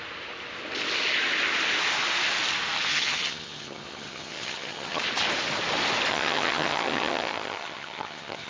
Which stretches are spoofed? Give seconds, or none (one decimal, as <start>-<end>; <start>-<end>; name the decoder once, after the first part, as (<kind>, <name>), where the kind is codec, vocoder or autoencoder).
2.9-5.0 (vocoder, HiFi-GAN); 6.1-8.5